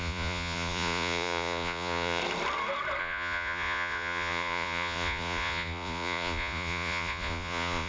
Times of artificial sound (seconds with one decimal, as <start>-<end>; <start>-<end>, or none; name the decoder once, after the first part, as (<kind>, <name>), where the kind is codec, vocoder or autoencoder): 0.0-2.2 (vocoder, Vocos); 3.0-7.9